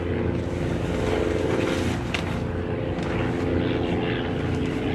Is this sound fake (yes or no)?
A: no